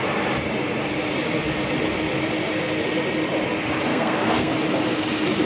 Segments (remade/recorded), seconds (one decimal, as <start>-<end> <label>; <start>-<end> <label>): 0.0-3.9 recorded; 3.9-4.5 remade; 4.5-5.5 recorded